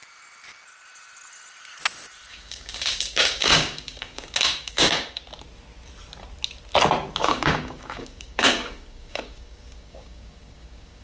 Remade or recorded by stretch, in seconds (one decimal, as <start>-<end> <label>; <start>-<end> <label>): 0.0-2.3 recorded; 2.3-5.2 remade; 5.2-7.2 recorded; 7.2-11.0 remade